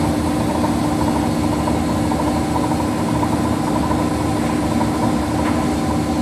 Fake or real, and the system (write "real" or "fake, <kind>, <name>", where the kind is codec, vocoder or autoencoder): real